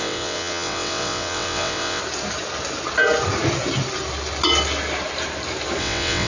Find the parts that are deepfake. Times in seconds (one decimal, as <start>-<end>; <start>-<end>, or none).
0.0-2.0; 5.8-6.3